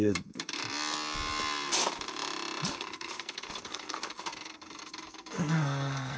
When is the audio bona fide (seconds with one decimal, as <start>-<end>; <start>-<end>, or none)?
0.6-2.7